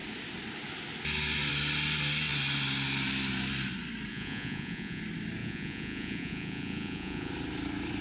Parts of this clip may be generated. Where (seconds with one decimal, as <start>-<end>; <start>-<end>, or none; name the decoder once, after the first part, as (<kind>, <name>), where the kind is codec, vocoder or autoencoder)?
4.1-5.0 (vocoder, Vocos); 5.4-7.3